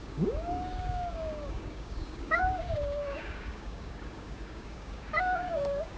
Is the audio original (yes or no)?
no